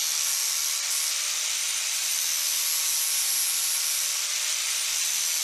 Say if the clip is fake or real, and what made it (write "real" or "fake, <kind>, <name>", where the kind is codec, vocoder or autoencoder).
real